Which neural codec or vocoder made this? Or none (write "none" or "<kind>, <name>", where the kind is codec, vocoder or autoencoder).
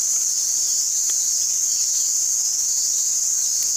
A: none